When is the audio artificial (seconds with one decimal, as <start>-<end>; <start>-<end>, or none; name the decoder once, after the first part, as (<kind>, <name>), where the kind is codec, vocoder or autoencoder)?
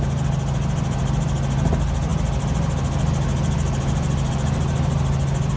none